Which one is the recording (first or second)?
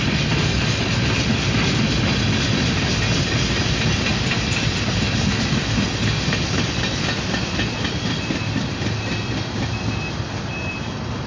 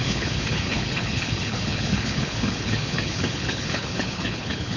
first